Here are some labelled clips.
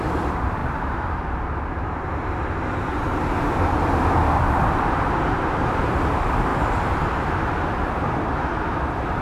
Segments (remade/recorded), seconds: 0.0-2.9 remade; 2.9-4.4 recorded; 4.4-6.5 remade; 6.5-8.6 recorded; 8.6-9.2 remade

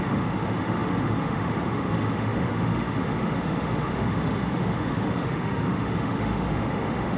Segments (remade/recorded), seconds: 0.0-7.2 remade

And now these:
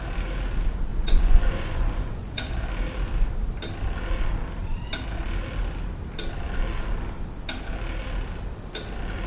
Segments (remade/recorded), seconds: 0.0-0.9 recorded; 0.9-2.7 remade; 2.7-9.3 recorded